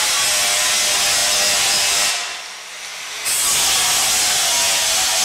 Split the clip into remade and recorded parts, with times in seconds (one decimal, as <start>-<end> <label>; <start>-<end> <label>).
0.0-1.2 recorded; 1.2-2.1 remade; 2.1-5.2 recorded